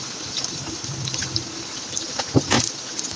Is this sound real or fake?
real